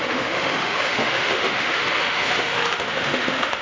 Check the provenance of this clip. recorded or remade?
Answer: remade